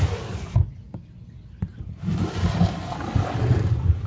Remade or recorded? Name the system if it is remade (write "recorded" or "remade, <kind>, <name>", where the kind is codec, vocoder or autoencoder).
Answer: recorded